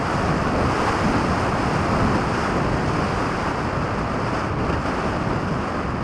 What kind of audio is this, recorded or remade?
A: recorded